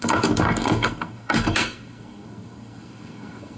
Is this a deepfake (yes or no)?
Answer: yes